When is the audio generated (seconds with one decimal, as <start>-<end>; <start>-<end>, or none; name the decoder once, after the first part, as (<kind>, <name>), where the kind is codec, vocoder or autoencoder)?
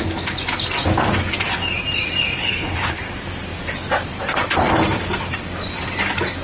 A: 2.4-3.0 (codec, HILCodec)